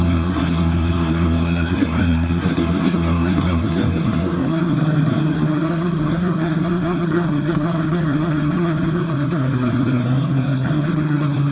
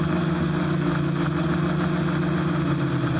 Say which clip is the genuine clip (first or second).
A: second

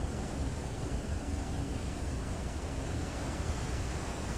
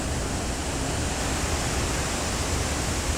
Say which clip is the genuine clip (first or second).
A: second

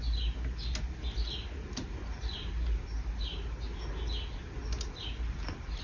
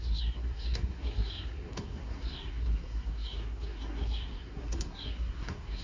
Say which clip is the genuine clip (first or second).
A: first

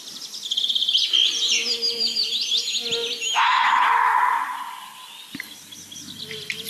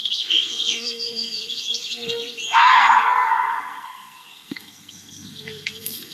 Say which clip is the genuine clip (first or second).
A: first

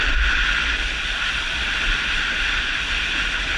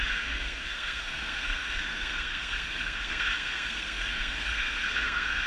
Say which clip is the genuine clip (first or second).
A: first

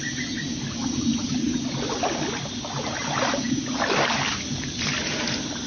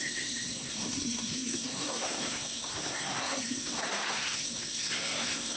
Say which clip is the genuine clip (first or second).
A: first